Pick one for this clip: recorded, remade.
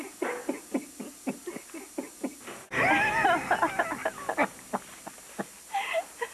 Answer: recorded